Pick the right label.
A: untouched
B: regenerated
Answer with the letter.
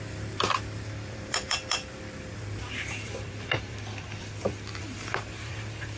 B